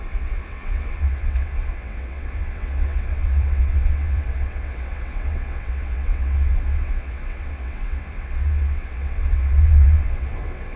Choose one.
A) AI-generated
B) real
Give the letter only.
A